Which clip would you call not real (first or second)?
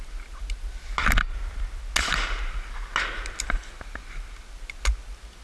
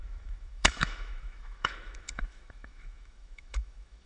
second